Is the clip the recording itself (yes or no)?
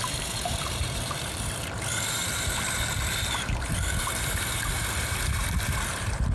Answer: no